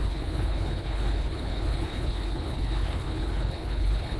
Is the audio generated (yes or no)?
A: yes